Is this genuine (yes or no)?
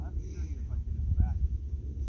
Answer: yes